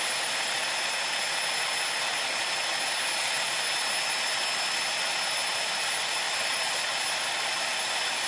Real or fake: real